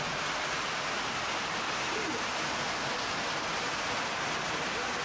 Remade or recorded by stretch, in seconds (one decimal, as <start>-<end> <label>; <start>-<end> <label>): 0.0-5.0 recorded